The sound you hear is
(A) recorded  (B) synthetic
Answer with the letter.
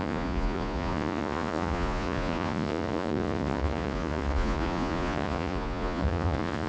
B